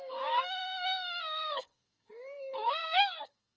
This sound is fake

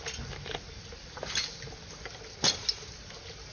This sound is real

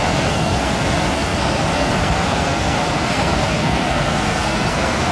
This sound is fake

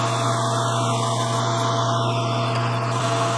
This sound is real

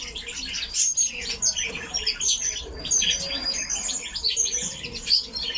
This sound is real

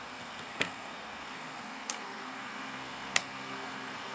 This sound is fake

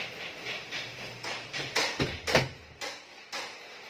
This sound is real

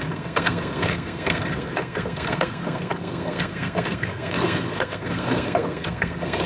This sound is fake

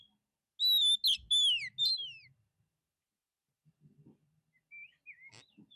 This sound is real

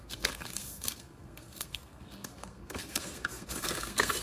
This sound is fake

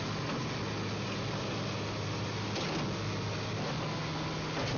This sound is real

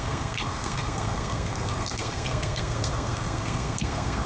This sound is fake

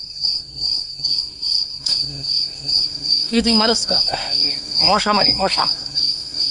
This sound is fake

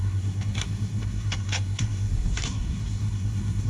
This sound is fake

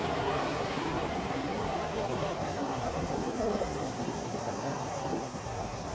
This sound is fake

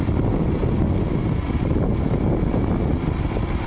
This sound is real